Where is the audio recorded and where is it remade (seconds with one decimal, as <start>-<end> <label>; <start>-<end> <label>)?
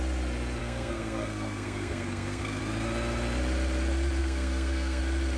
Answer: 0.0-0.6 recorded; 0.6-2.6 remade; 2.6-4.2 recorded; 4.2-5.0 remade; 5.0-5.4 recorded